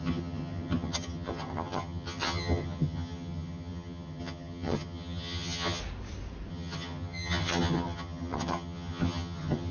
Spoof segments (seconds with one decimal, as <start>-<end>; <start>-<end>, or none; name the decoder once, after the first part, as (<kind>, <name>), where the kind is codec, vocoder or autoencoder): 0.0-5.8 (vocoder, HiFi-GAN); 6.5-9.7